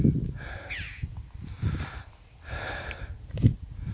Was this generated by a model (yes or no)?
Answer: no